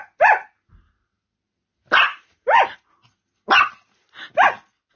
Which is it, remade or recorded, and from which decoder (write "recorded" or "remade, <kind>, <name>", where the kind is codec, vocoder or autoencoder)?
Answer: recorded